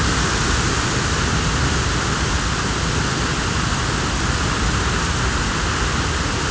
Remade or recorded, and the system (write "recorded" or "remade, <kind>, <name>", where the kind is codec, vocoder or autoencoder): recorded